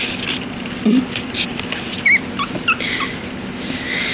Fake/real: real